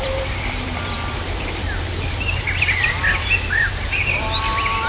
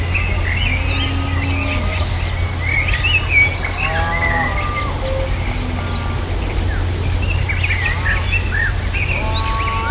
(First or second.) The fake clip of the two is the first